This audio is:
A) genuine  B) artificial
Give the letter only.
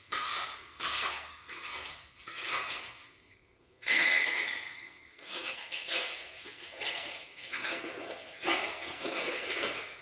B